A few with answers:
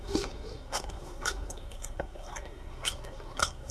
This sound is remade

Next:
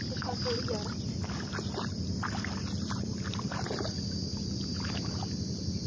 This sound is recorded